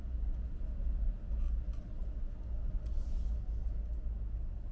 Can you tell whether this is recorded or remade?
recorded